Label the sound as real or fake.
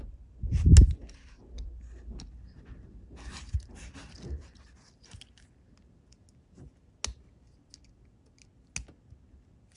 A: real